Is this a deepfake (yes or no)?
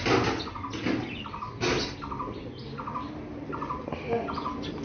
no